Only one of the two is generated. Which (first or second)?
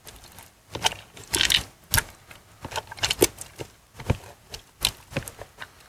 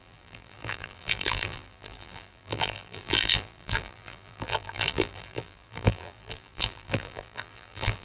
second